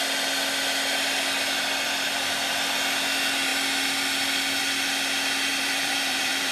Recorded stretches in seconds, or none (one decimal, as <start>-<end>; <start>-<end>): 0.0-5.5